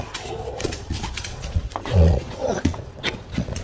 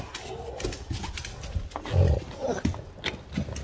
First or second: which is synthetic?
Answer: first